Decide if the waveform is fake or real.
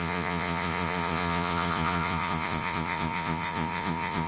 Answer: fake